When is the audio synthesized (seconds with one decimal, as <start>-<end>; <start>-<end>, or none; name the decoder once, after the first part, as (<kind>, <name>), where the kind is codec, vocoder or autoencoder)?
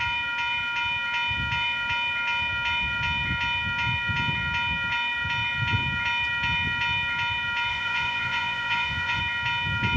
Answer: 7.7-9.2 (vocoder, Vocos)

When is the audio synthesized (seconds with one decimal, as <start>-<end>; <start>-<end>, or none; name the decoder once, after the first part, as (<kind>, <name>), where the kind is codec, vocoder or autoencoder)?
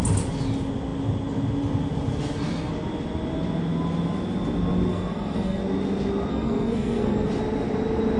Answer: 4.9-5.6 (codec, SNAC); 6.3-7.3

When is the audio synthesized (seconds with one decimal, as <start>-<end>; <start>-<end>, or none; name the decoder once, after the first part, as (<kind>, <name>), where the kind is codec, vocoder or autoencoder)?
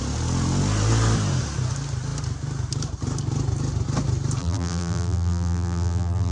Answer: 4.4-6.3 (vocoder, BigVGAN v2)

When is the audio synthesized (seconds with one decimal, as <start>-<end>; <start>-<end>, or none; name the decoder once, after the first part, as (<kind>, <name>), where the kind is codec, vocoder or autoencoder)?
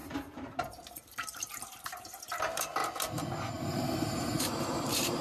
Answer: 0.0-2.8 (vocoder, BigVGAN v2); 3.6-5.2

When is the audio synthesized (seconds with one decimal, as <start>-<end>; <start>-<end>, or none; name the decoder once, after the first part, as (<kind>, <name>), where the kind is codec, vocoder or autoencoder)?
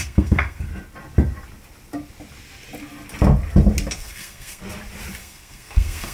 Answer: 0.0-0.7 (codec, SNAC); 3.9-4.6; 5.2-6.1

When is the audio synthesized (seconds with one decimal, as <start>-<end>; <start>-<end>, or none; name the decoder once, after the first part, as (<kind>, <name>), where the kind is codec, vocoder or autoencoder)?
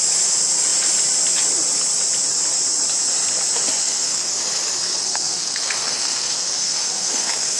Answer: 3.8-4.3 (codec, SNAC); 4.8-7.6